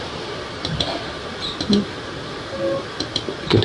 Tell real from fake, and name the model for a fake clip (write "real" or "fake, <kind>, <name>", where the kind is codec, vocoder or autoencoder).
real